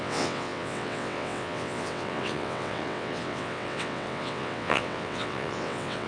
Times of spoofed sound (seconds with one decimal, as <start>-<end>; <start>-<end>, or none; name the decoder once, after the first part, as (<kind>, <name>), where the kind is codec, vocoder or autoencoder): 0.0-6.1 (vocoder, WaveNeXt)